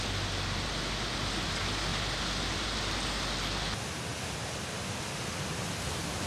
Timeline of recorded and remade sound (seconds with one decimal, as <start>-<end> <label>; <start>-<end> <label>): 0.0-6.3 recorded